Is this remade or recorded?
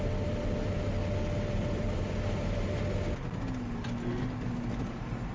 recorded